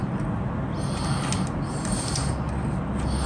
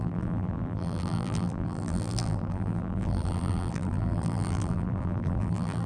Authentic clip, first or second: first